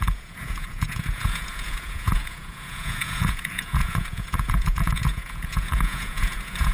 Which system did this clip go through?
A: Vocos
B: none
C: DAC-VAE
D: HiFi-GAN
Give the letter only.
A